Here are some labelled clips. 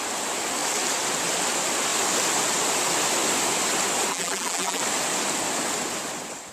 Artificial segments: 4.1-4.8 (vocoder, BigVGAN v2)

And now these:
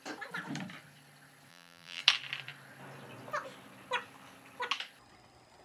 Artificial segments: 1.5-2.0 (vocoder, BigVGAN v2)

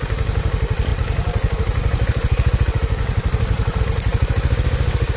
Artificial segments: none

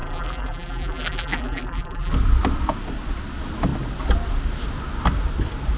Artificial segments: 0.0-2.1 (vocoder, BigVGAN v2)

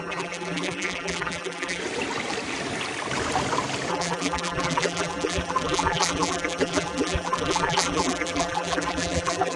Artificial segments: 0.0-1.8 (vocoder, BigVGAN v2); 3.9-9.6